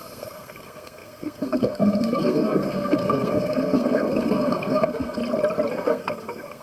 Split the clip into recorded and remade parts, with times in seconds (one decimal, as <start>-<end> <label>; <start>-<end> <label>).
0.0-5.2 remade; 5.2-5.7 recorded; 5.7-6.6 remade